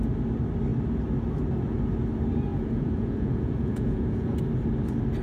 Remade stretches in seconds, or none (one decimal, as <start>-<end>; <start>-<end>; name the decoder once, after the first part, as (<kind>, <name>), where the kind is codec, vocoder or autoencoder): 2.5-4.4 (vocoder, Vocos)